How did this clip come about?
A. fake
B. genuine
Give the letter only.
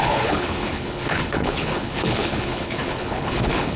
A